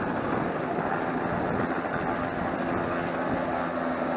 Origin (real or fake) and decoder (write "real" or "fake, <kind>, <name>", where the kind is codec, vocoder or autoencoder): real